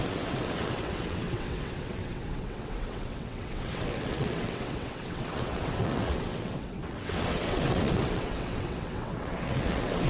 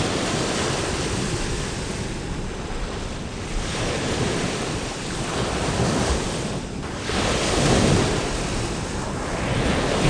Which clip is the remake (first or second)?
first